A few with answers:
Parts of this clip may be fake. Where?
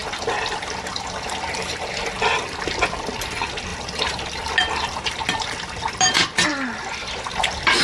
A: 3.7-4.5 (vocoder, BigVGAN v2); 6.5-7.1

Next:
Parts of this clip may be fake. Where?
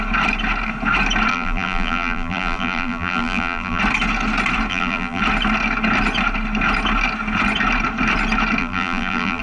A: 1.3-3.8 (vocoder, BigVGAN v2); 4.7-5.2; 8.6-9.4